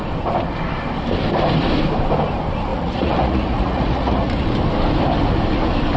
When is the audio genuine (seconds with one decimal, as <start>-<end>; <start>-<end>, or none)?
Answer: 0.0-2.7; 4.3-6.0